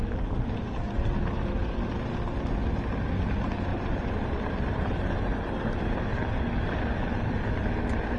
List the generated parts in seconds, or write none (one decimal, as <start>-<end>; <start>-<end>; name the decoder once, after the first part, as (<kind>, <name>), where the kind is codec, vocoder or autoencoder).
3.7-6.3 (vocoder, BigVGAN v2)